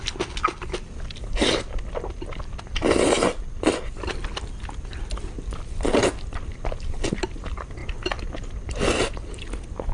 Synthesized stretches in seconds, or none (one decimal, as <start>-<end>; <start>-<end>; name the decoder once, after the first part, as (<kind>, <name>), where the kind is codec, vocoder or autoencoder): none